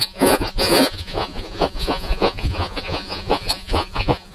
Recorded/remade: remade